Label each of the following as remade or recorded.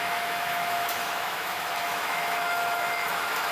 remade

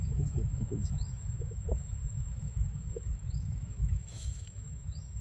remade